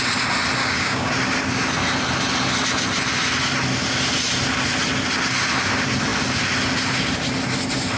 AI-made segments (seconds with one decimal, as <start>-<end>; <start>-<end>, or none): 0.6-1.1